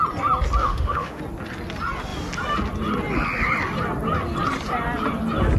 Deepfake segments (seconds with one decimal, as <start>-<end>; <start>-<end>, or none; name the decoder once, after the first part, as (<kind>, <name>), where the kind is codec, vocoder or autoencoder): 0.6-1.2 (autoencoder, DAC-VAE)